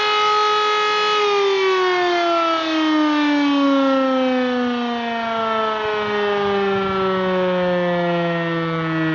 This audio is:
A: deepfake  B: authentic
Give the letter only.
B